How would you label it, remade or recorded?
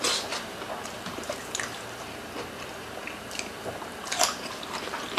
remade